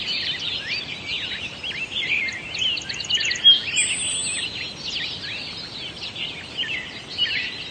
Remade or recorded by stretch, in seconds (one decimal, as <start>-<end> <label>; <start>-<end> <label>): 0.0-7.7 recorded